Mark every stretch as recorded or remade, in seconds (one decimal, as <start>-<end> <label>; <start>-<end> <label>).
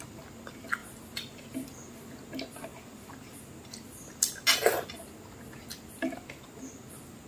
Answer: 0.0-0.8 recorded; 0.8-1.9 remade; 1.9-2.7 recorded; 2.7-3.4 remade; 3.4-7.3 recorded